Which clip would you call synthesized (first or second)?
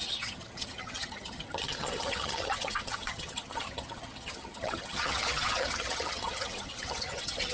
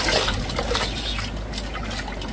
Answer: first